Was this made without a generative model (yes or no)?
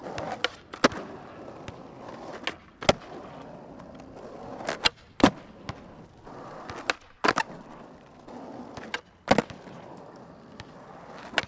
yes